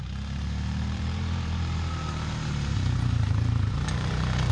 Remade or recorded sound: remade